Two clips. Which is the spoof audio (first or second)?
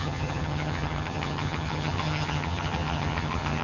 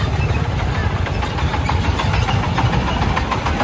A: first